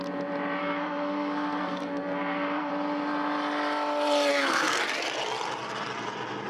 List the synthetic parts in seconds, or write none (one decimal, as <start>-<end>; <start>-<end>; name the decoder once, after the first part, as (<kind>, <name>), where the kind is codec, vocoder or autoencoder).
0.6-2.7 (codec, SNAC); 4.3-4.8